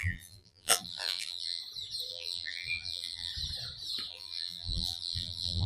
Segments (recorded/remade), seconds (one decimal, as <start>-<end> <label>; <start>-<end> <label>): 0.0-1.6 remade; 1.6-2.1 recorded; 2.1-3.3 remade; 3.3-4.1 recorded; 4.1-5.7 remade